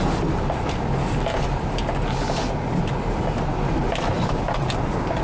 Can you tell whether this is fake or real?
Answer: real